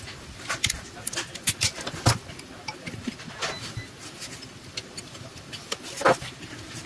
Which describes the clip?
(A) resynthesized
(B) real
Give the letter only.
B